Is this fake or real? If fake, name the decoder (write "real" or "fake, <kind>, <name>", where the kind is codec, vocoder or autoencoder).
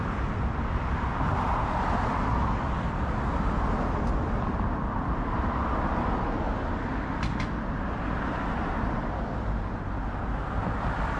real